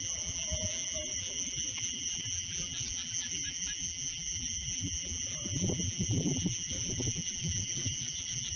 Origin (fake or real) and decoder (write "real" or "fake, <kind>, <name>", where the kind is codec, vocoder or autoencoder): fake, vocoder, BigVGAN v2